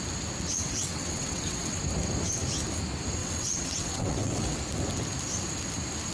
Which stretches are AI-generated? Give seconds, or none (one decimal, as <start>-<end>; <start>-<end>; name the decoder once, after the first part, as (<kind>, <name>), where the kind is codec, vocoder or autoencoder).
0.5-1.8 (vocoder, WaveNeXt); 3.2-4.6